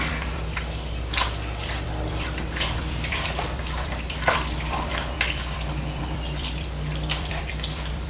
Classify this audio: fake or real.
fake